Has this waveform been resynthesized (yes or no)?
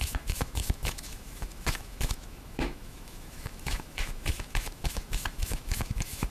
yes